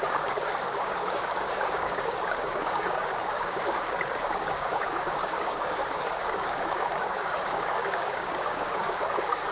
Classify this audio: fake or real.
fake